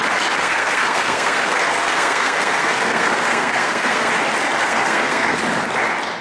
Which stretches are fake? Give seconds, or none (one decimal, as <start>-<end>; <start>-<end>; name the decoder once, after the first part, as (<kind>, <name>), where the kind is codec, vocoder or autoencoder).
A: 0.4-4.1 (codec, SNAC); 4.6-5.4